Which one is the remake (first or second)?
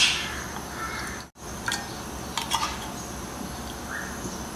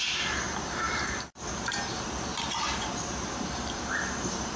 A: second